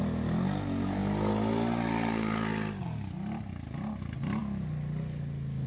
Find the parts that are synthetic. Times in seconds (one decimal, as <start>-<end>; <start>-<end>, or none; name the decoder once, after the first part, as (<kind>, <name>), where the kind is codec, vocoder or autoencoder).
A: none